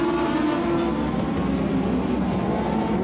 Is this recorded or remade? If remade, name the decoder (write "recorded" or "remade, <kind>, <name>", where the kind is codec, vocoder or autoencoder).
recorded